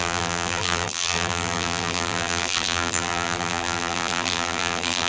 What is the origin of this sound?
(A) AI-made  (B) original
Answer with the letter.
A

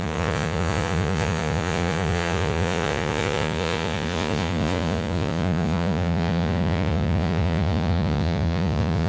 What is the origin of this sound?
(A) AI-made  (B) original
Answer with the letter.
A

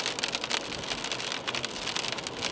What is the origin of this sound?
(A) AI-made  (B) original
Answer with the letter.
B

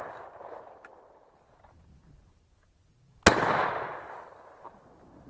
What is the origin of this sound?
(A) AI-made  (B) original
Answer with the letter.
B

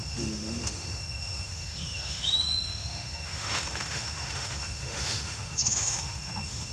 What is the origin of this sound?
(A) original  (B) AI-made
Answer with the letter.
B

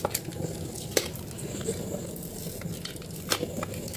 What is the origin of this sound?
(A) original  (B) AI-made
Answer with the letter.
A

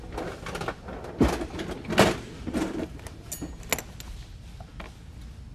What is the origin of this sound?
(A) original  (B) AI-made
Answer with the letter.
A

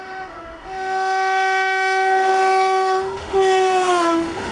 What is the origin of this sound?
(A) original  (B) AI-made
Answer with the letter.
B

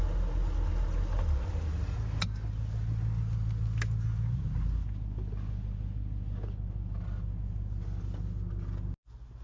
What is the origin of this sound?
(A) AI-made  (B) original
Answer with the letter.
B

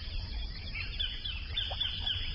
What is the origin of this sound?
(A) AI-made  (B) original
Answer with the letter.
A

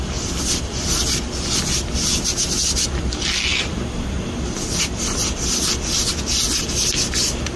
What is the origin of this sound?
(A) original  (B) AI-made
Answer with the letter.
A